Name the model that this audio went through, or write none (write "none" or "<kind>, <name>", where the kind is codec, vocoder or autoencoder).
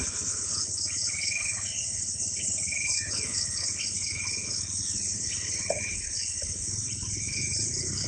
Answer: codec, HILCodec